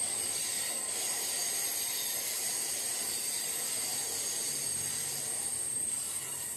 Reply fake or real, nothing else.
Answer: real